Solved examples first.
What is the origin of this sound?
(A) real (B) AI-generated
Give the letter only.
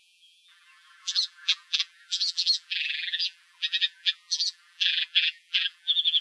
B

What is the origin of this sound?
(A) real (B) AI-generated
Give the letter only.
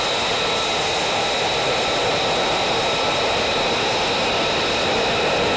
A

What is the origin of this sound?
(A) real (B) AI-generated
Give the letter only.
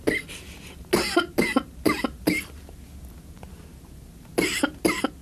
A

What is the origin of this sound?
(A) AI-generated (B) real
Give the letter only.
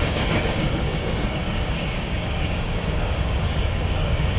A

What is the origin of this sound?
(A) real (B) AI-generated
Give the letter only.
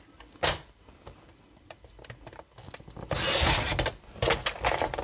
A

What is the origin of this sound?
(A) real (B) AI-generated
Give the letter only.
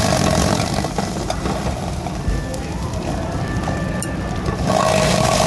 B